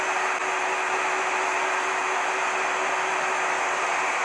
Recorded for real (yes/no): yes